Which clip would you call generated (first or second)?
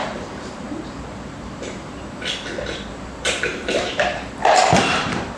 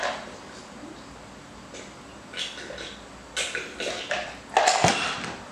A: first